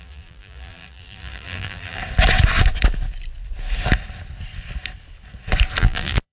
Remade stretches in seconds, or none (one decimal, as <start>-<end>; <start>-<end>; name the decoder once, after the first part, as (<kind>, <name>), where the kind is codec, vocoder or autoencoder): 0.0-2.0 (vocoder, BigVGAN v2); 5.8-6.3